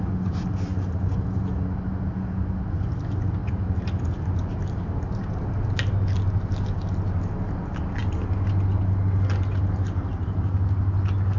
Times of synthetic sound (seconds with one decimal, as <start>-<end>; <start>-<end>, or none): none